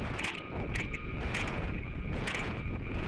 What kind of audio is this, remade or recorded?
remade